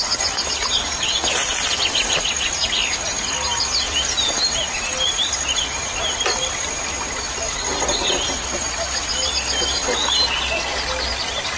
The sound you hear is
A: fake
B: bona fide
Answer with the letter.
B